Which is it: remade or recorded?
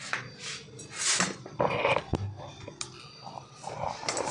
recorded